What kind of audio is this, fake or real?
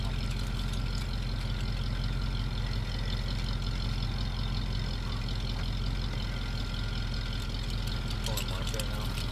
real